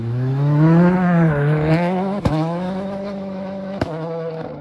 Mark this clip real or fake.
fake